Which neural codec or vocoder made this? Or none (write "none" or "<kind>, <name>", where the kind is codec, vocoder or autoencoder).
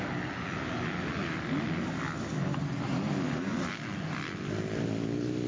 none